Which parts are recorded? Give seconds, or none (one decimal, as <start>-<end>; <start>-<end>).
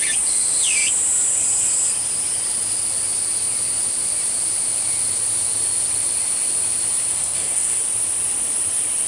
0.0-7.1; 7.8-9.1